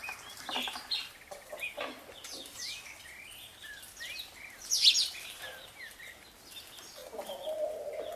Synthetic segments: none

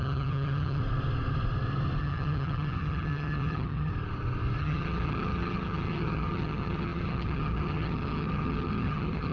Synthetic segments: 0.0-0.8 (vocoder, HiFi-GAN); 2.0-3.9; 4.6-9.3

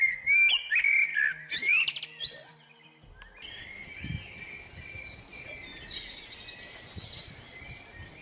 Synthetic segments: none

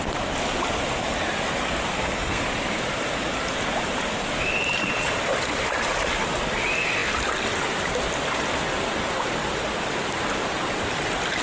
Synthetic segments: 1.9-2.4 (codec, SNAC)

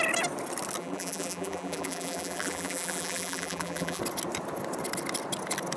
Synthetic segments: 0.8-4.0 (vocoder, BigVGAN v2)

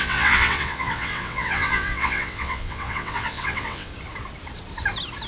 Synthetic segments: 0.0-3.9 (vocoder, WaveNeXt)

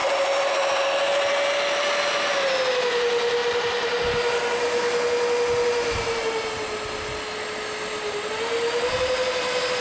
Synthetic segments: 0.0-0.5 (vocoder, BigVGAN v2); 3.4-4.0